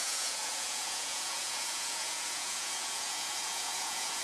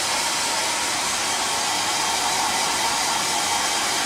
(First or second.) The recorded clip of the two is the second